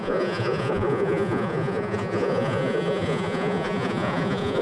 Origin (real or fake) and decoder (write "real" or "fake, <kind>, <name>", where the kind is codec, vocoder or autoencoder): fake, vocoder, Vocos